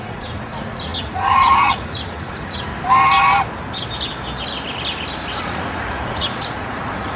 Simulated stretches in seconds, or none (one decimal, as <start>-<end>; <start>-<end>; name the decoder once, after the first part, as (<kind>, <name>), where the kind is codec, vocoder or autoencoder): 0.0-2.7 (vocoder, Vocos); 5.4-7.2